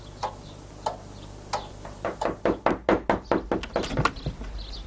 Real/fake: real